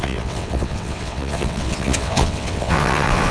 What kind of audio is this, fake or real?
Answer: fake